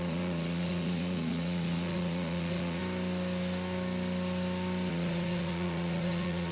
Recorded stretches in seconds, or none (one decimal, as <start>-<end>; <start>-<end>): 2.8-4.9